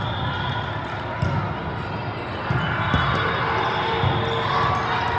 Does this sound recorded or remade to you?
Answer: recorded